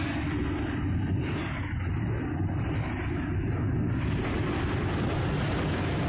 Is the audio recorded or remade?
recorded